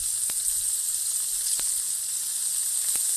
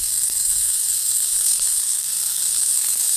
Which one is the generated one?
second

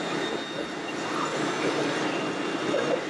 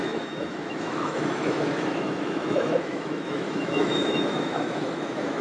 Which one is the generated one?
second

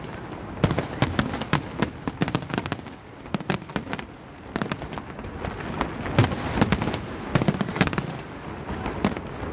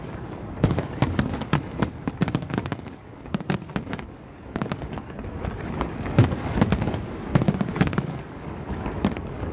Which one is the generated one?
second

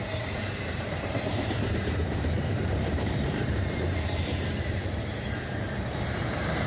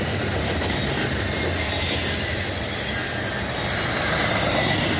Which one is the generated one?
first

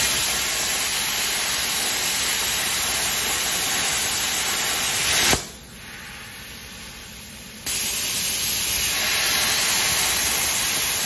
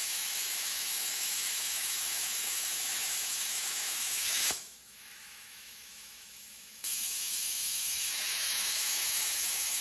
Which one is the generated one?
second